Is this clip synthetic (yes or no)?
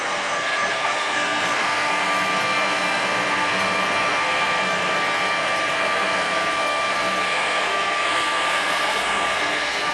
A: yes